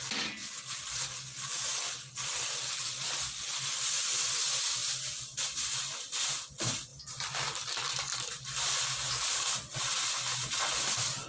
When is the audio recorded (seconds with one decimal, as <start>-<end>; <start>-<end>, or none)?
0.0-11.3